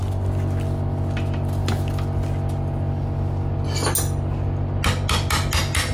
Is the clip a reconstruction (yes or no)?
no